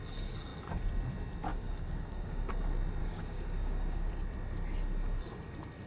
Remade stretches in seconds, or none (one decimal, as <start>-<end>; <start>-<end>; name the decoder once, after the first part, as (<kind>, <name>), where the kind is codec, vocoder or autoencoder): 1.5-2.5 (codec, DAC); 3.0-4.1